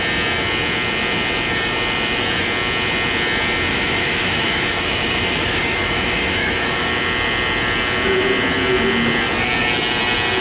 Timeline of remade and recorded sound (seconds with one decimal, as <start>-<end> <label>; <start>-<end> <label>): 0.0-3.7 recorded; 3.7-6.9 remade; 6.9-10.4 recorded